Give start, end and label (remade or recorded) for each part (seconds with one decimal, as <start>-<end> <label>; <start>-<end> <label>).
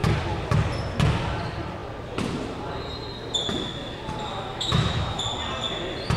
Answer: 0.0-4.5 recorded; 4.5-5.2 remade; 5.2-6.2 recorded